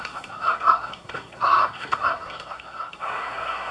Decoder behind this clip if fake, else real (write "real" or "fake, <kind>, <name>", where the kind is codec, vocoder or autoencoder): fake, codec, SNAC